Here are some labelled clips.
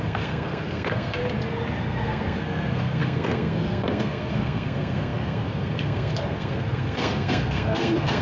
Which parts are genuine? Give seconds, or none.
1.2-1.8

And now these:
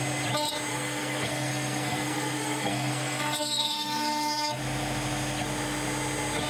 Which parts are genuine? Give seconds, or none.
0.0-0.7; 4.6-6.5

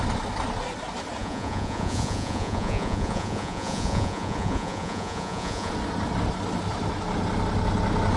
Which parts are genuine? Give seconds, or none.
0.0-1.2; 5.7-8.2

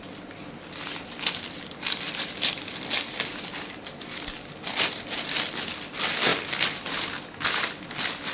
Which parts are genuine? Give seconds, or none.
0.0-8.3

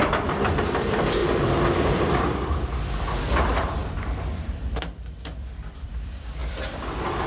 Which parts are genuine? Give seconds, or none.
none

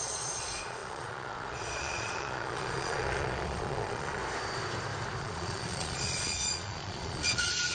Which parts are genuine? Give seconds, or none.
4.2-5.2

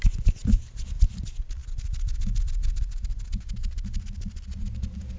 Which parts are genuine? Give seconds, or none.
0.0-5.2